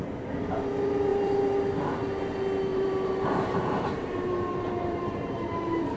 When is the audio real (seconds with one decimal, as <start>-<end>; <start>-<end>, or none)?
0.0-1.1; 1.6-2.7